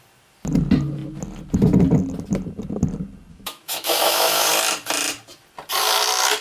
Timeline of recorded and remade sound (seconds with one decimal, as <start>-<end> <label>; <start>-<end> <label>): 0.0-3.3 recorded; 3.3-4.5 remade; 4.5-6.4 recorded

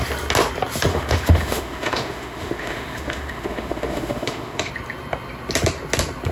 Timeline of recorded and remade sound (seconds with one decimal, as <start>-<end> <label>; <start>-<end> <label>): 0.0-0.9 recorded; 0.9-4.7 remade; 4.7-6.3 recorded

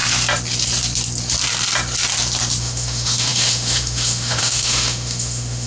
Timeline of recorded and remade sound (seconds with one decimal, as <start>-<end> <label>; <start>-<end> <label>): 0.0-2.6 recorded; 2.6-5.7 remade

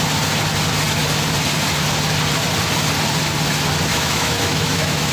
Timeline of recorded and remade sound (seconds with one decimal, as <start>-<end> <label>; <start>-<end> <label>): 0.0-3.9 recorded; 3.9-5.1 remade